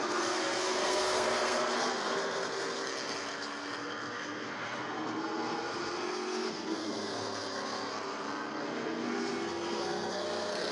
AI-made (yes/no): yes